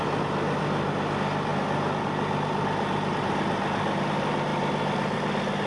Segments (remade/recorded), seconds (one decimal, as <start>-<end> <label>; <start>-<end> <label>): 0.0-5.7 recorded